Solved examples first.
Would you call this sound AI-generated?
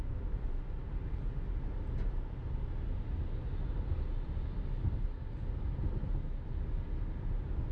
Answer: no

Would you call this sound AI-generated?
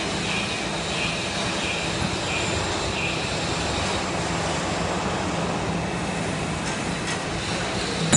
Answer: no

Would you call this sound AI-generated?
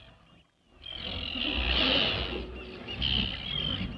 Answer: no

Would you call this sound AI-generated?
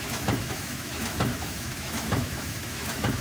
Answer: yes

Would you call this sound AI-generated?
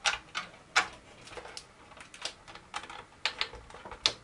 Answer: no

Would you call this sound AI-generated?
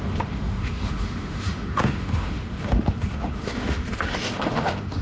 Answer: yes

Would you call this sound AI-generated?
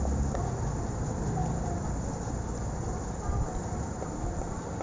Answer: no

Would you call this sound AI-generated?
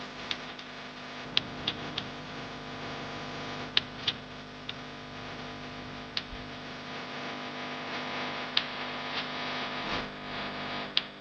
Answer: no